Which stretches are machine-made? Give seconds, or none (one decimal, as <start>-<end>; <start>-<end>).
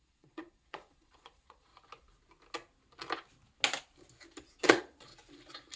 0.0-1.7; 4.6-5.1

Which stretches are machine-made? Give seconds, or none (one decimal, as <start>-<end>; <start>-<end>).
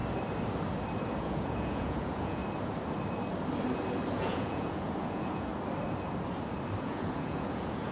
1.2-2.4; 4.1-5.5; 6.8-7.9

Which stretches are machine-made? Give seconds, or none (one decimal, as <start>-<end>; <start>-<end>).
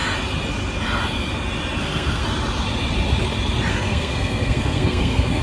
1.8-2.2; 3.7-5.4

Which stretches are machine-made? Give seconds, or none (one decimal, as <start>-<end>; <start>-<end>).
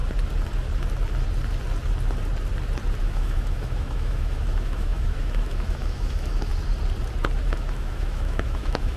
3.0-6.5; 7.4-9.0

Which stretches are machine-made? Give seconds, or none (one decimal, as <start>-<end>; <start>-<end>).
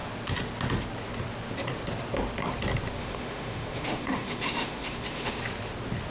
3.0-5.4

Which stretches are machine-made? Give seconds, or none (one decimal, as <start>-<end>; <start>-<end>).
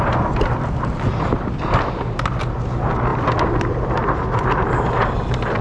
none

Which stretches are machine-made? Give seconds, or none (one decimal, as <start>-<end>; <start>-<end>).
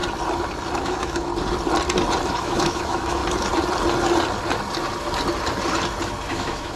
0.8-1.3; 2.3-3.2; 6.3-6.8